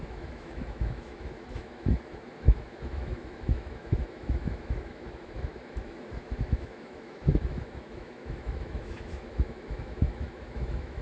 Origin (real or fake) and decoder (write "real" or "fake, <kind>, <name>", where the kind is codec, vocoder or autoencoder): fake, autoencoder, DAC-VAE